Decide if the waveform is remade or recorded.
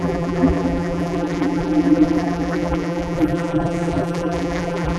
remade